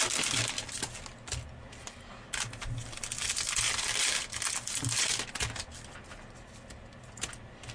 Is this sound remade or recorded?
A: recorded